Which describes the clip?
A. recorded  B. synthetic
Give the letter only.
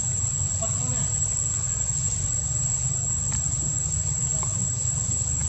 A